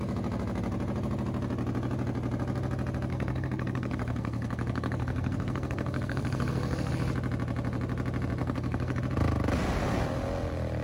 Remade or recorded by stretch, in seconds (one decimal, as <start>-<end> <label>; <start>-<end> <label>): 0.0-3.1 recorded; 3.1-6.9 remade; 6.9-8.4 recorded; 8.4-9.0 remade; 9.0-10.8 recorded